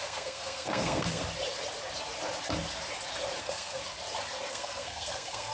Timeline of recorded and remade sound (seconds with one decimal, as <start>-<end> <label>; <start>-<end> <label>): 0.0-1.2 remade; 1.2-3.4 recorded; 3.4-3.8 remade; 3.8-4.5 recorded; 4.5-5.5 remade